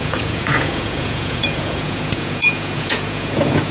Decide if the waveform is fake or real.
fake